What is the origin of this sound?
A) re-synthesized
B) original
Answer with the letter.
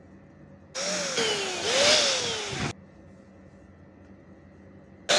B